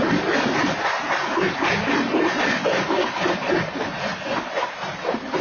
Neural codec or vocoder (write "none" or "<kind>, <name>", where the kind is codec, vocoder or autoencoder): vocoder, BigVGAN v2